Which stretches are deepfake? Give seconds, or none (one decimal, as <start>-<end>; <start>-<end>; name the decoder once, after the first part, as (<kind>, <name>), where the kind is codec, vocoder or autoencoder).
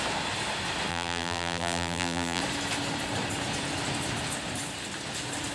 0.9-2.4 (vocoder, BigVGAN v2)